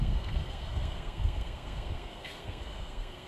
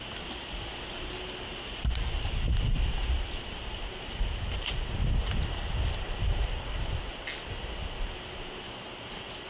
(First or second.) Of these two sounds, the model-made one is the first